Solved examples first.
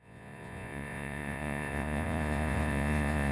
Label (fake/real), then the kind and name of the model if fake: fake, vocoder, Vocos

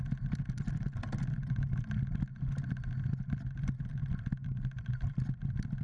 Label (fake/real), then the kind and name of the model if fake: real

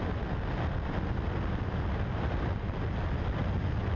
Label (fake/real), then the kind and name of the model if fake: real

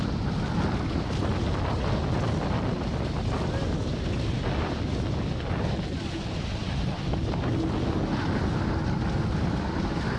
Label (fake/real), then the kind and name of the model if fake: real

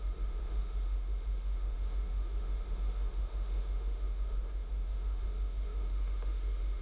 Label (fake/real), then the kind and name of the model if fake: fake, autoencoder, DAC-VAE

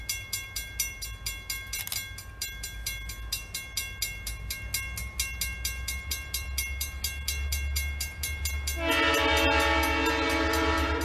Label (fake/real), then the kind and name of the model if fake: real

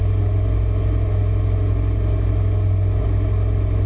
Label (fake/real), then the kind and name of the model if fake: real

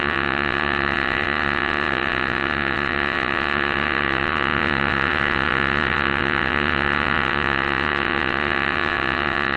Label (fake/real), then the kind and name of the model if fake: fake, vocoder, WaveNeXt